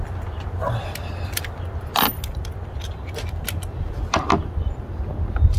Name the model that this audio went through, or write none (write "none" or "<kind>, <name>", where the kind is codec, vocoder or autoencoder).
none